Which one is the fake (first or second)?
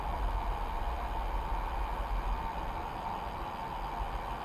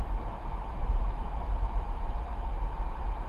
second